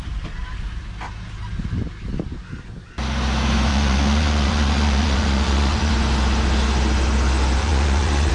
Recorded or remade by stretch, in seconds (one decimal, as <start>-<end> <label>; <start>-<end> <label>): 0.0-3.7 recorded; 3.7-5.9 remade; 5.9-7.6 recorded; 7.6-8.3 remade